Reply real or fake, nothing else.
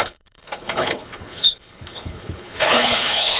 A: fake